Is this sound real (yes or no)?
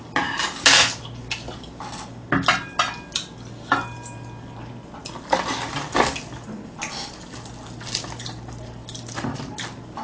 yes